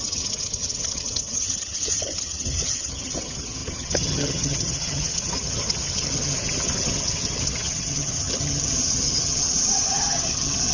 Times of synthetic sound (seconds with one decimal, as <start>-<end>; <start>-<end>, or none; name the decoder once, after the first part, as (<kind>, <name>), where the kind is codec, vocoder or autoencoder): 0.0-10.7 (vocoder, HiFi-GAN)